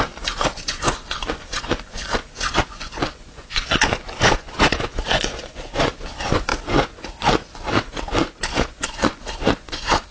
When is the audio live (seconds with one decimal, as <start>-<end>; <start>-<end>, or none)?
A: none